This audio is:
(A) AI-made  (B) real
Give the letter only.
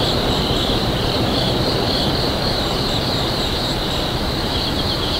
A